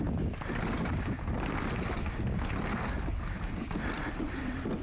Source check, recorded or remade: recorded